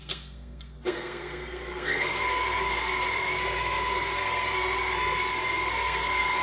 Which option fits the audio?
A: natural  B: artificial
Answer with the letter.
B